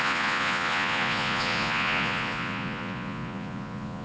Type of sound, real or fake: fake